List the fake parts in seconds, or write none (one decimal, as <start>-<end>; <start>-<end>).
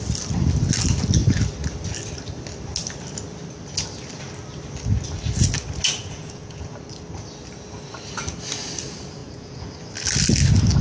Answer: 6.0-6.7; 9.2-9.7